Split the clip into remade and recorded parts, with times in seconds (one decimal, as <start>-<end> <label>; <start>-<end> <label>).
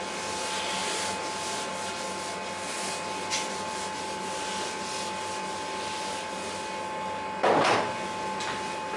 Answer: 0.0-9.0 recorded